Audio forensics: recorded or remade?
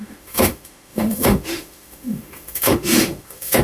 remade